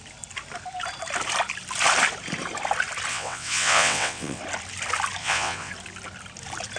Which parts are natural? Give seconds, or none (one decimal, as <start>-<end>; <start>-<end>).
0.0-3.1; 4.4-5.2; 5.7-6.8